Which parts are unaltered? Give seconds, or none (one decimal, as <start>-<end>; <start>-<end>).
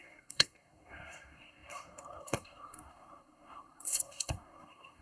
none